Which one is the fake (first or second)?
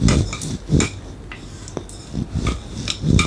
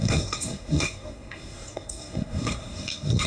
second